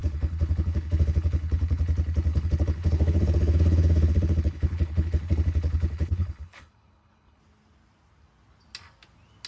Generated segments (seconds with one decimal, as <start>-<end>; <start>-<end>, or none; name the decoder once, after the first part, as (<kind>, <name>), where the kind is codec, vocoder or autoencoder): 0.0-1.8 (codec, HILCodec); 2.3-7.4